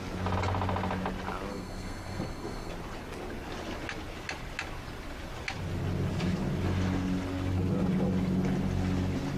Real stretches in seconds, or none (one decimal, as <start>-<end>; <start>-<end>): 0.0-1.5; 2.7-9.4